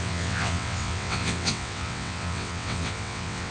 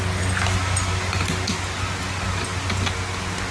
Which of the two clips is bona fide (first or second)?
second